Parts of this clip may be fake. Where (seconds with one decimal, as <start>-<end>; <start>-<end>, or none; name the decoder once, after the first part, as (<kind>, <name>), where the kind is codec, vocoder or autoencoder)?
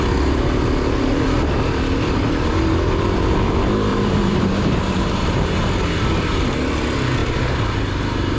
3.9-6.5 (vocoder, BigVGAN v2); 7.2-8.4